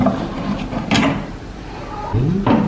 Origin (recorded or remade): recorded